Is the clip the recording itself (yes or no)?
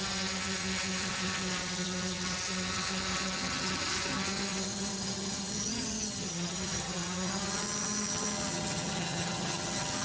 no